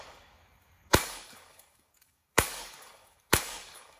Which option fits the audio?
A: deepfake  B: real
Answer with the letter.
A